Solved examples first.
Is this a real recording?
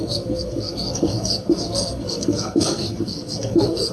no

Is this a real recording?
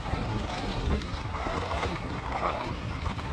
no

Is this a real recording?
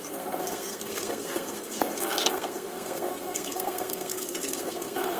no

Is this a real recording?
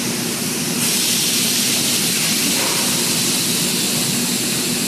yes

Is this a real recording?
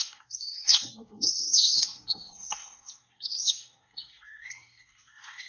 no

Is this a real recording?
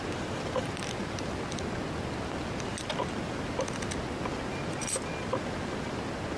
yes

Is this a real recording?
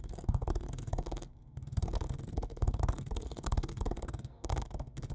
no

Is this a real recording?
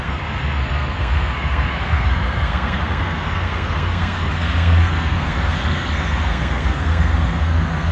no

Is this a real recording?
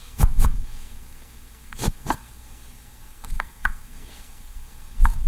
no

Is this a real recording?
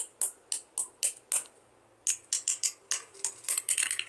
yes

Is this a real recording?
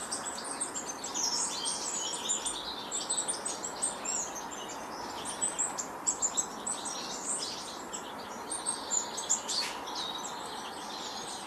yes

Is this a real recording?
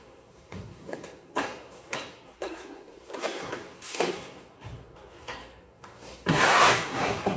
no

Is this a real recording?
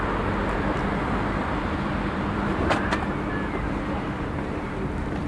yes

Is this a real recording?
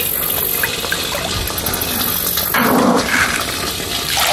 yes